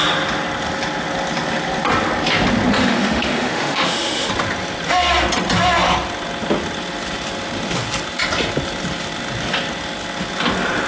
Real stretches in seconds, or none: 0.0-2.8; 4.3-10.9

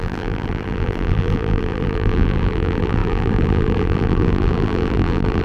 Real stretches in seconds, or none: none

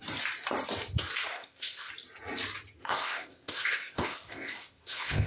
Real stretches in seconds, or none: 0.0-1.3; 1.9-2.8

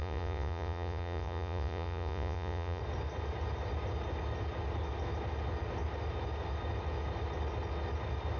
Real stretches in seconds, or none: 2.8-8.4

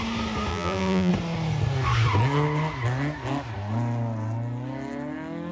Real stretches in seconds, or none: 0.0-0.5; 1.1-5.5

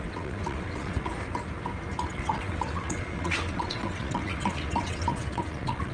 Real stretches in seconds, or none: 1.1-2.1